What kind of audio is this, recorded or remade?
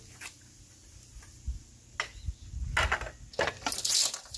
recorded